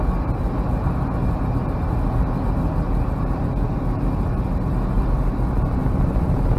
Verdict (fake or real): real